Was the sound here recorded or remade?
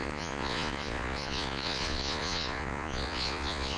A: remade